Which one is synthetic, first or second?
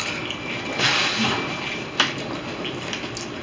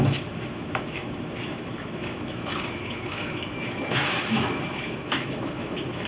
second